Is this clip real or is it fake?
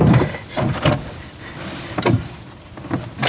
real